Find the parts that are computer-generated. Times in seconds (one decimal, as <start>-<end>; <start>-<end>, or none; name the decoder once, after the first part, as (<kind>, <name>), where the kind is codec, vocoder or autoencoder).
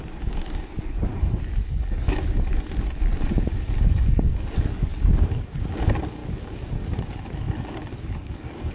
0.0-1.1 (codec, DAC); 3.8-8.7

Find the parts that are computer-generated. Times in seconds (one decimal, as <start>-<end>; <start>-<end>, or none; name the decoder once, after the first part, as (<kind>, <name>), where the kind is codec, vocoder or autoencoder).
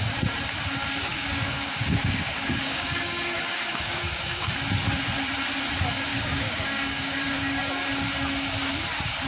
1.1-4.5 (codec, DAC); 6.1-7.6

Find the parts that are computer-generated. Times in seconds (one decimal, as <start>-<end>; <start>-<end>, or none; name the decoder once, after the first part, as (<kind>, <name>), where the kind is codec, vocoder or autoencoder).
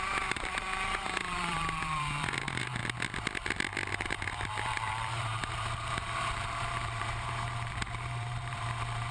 0.0-2.8 (vocoder, BigVGAN v2); 4.0-9.1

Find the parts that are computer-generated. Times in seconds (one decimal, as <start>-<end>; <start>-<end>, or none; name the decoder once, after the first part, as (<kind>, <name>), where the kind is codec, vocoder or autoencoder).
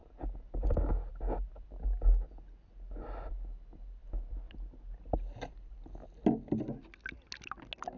none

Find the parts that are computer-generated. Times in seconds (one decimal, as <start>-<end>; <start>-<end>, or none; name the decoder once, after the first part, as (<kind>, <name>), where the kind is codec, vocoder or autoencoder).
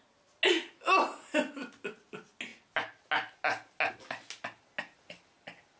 none